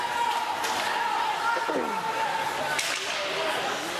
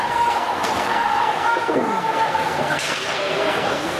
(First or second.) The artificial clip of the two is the second